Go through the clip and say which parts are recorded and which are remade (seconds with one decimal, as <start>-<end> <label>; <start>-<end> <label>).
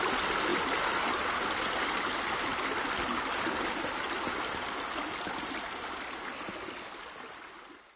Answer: 0.0-8.0 recorded